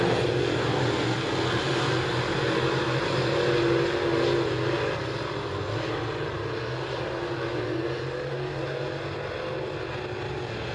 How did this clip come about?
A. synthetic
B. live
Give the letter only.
B